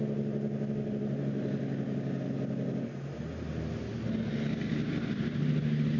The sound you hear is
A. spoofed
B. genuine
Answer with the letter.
B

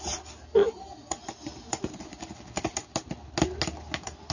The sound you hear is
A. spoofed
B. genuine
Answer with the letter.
B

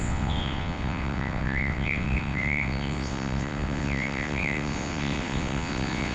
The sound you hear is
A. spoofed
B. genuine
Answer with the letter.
A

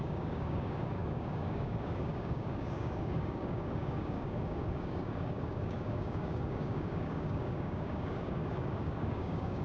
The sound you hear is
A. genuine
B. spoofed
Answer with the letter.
B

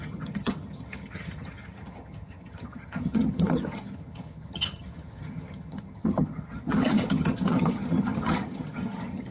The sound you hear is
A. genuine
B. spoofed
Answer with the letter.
B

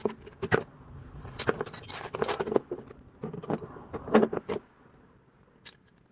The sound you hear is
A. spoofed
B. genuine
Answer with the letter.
B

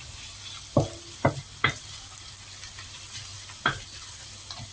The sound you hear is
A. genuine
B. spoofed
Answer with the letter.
A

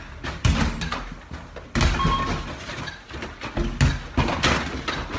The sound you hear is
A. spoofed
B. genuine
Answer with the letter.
B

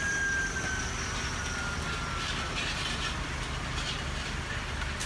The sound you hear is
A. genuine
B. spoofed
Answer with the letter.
A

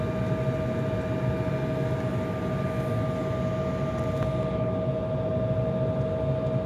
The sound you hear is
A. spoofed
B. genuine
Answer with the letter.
B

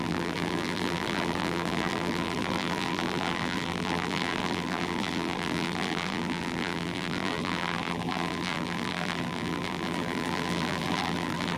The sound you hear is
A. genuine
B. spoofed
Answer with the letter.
B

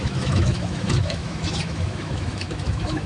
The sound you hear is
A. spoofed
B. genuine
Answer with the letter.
A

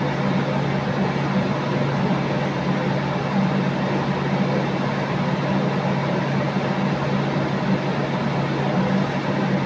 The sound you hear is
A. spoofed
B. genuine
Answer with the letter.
B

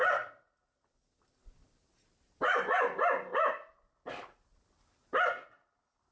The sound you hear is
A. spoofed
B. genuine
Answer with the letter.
B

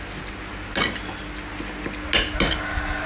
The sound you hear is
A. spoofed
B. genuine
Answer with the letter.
B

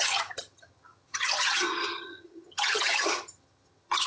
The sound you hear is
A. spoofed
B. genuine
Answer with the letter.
A